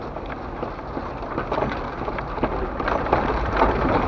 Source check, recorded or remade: recorded